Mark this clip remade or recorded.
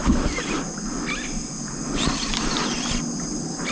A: recorded